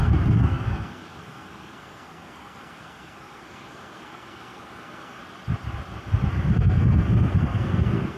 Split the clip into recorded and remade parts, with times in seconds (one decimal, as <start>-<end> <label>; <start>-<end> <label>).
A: 0.0-5.2 remade; 5.2-6.3 recorded; 6.3-8.2 remade